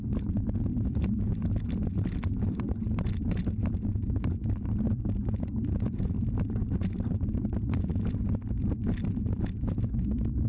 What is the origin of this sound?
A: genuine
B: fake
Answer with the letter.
A